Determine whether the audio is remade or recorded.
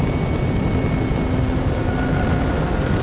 recorded